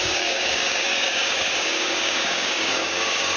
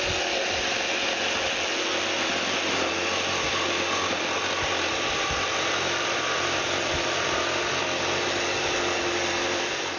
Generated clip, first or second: first